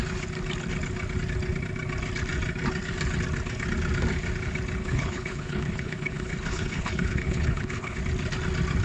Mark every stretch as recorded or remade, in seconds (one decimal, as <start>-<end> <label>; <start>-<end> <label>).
0.0-4.8 recorded; 4.8-8.0 remade; 8.0-8.8 recorded